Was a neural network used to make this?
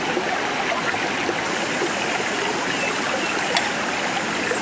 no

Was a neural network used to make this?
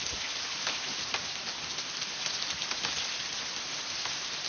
no